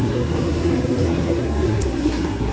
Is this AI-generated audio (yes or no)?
yes